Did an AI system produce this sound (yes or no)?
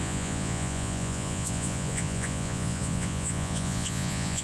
yes